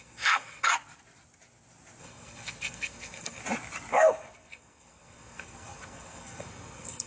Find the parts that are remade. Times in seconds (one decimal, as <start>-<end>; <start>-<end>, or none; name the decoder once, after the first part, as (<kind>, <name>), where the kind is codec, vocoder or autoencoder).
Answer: 0.0-0.7 (codec, SNAC); 2.0-3.4; 3.9-7.1

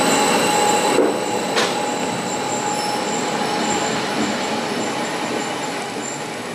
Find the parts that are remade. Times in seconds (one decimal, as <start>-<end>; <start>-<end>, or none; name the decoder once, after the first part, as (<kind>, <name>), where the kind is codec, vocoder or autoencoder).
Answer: none

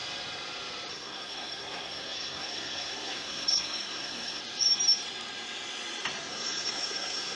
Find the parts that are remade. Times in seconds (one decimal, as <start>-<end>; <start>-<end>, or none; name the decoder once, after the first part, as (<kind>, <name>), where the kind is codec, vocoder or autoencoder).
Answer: 0.9-4.4 (codec, SNAC); 6.3-7.4

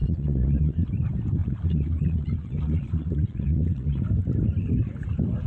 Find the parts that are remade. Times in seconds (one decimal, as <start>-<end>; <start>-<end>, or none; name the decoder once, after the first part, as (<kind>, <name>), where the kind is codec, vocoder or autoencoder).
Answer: 0.0-0.9 (vocoder, Vocos); 1.4-4.0

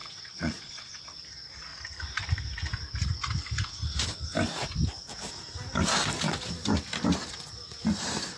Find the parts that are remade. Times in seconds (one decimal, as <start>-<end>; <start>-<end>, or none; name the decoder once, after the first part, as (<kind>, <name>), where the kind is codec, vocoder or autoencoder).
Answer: 0.0-0.9 (vocoder, Vocos)

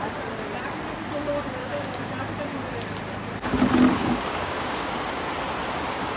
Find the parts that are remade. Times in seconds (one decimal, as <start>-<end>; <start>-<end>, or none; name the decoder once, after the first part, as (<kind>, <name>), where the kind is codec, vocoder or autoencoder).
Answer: 1.6-2.1 (codec, DAC); 4.0-5.0